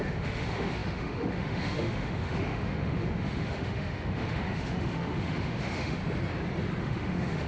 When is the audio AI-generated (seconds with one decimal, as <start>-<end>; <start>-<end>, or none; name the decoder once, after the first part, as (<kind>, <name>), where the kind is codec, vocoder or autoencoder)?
0.0-6.0 (autoencoder, DAC-VAE); 6.8-7.5